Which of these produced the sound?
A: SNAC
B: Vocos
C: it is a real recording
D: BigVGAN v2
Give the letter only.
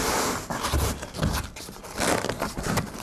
D